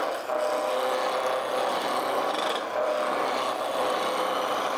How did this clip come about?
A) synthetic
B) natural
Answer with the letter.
B